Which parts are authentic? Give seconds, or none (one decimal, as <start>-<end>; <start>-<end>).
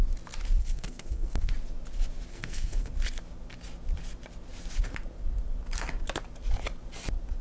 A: 0.0-0.6; 1.5-2.3; 2.9-7.4